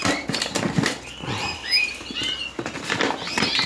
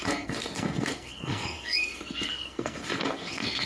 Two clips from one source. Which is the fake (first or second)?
second